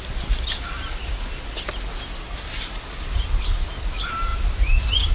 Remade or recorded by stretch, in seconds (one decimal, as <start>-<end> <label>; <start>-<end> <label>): 0.0-5.1 recorded